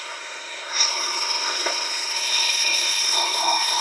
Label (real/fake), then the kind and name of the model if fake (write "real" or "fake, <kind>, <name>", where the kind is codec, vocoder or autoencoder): fake, codec, SNAC